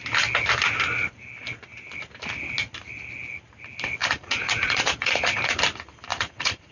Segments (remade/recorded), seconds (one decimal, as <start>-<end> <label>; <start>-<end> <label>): 0.0-4.0 recorded; 4.0-5.6 remade; 5.6-6.1 recorded; 6.1-6.7 remade